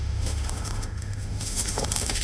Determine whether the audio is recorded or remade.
remade